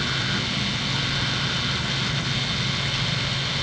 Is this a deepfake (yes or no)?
no